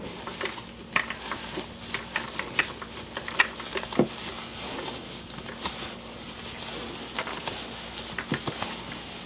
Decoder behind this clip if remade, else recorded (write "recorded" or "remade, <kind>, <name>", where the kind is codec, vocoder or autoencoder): recorded